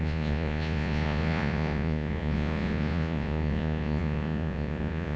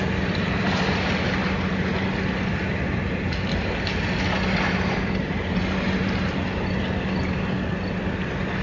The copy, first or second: first